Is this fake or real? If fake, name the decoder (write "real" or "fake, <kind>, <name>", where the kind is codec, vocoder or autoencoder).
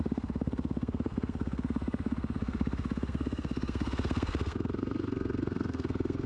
fake, codec, SNAC